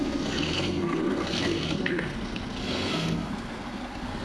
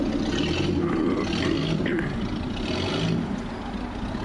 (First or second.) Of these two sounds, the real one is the second